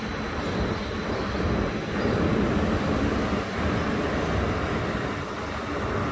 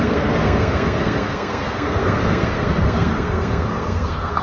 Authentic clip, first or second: first